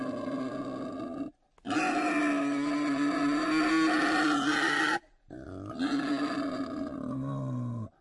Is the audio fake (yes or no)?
no